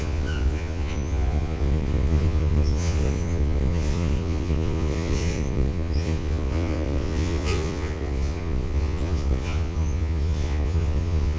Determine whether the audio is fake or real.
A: fake